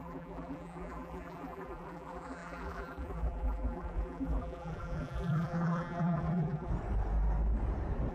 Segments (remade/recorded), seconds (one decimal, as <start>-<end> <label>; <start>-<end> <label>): 0.0-6.7 remade; 6.7-8.1 recorded

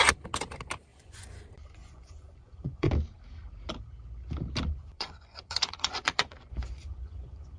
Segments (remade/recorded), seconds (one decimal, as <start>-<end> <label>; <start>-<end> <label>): 0.0-0.9 recorded; 0.9-1.4 remade; 1.4-1.8 recorded; 1.8-2.9 remade; 2.9-4.8 recorded; 4.8-7.6 remade